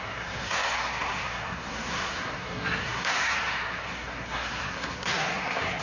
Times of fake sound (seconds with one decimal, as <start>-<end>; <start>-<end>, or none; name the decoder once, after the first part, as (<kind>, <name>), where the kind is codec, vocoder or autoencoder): 0.0-5.8 (codec, SNAC)